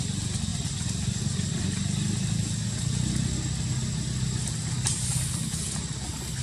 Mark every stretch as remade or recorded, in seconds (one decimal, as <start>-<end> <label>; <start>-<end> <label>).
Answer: 0.0-6.4 remade